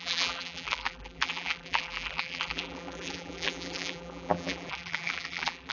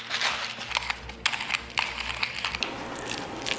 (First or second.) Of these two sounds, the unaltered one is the second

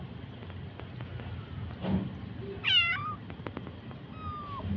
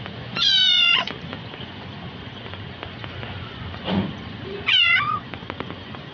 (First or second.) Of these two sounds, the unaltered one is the first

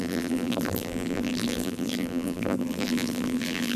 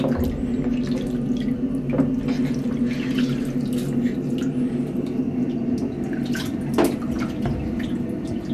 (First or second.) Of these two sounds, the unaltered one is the second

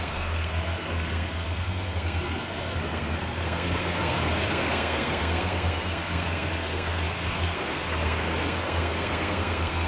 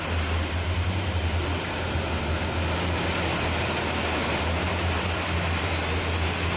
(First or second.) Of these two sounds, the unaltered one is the second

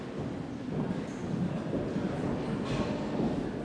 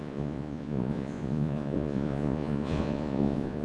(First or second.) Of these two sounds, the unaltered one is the first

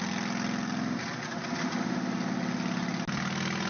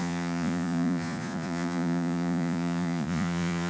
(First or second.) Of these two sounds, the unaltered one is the first